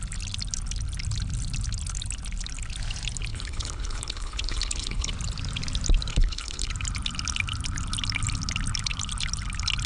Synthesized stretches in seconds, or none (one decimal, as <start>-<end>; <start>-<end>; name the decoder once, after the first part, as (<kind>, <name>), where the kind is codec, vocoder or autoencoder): 3.3-5.1 (codec, HILCodec); 6.1-6.7